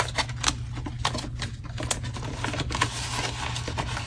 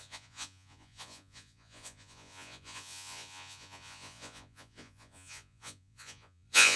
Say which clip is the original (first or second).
first